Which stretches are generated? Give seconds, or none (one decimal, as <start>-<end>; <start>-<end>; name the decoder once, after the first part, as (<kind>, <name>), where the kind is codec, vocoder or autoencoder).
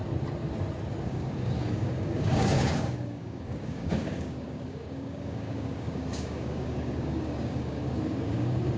1.0-8.8 (codec, DAC)